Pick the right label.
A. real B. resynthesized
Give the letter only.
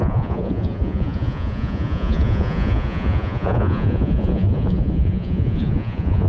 B